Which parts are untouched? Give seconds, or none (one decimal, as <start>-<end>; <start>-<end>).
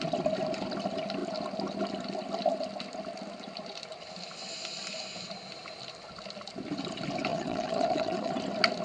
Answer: 0.0-7.3; 8.4-8.8